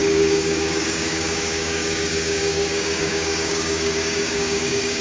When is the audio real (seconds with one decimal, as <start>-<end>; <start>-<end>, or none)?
none